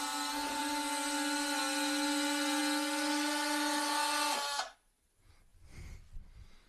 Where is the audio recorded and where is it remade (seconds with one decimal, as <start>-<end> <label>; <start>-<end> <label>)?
0.0-6.7 recorded